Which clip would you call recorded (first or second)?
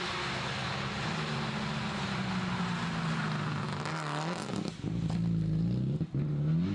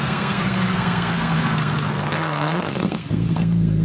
first